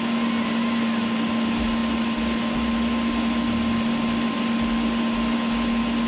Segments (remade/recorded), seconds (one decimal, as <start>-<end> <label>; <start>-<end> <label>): 0.0-6.1 recorded